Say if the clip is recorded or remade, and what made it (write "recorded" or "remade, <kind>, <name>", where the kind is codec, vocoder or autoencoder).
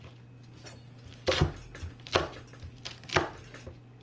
recorded